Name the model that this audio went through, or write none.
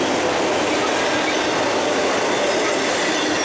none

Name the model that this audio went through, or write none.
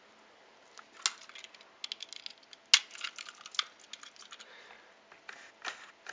none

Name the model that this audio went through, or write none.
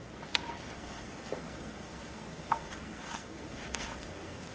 codec, SNAC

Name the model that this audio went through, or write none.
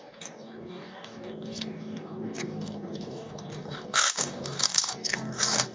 codec, DAC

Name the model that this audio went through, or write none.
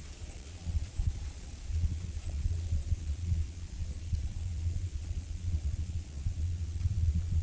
vocoder, Vocos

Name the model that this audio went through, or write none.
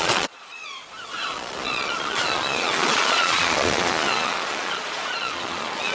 vocoder, Vocos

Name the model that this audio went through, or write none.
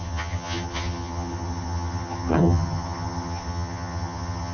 vocoder, HiFi-GAN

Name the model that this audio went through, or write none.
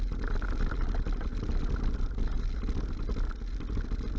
none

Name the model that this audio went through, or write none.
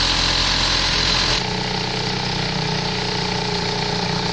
none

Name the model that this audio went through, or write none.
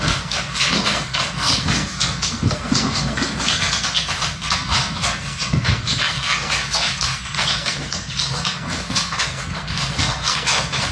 codec, SNAC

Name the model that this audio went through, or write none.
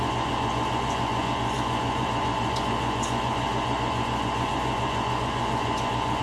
vocoder, Vocos